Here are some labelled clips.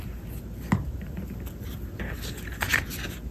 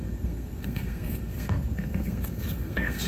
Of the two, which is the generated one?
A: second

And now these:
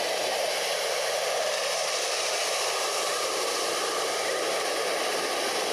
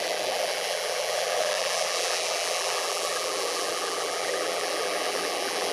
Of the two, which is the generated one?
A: second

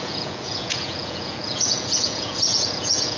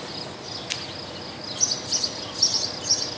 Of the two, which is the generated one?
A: first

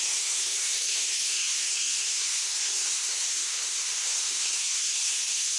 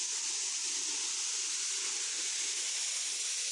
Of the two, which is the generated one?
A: first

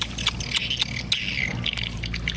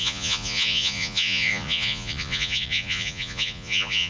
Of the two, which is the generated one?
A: second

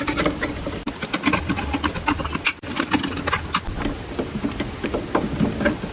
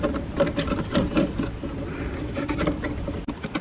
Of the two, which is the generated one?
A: second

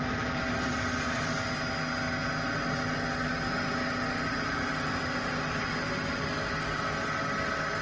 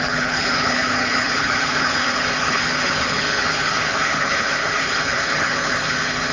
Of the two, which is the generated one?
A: second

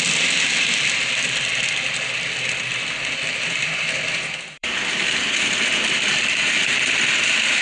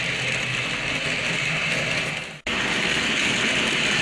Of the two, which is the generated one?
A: first